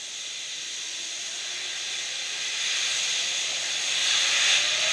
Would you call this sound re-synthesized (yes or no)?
no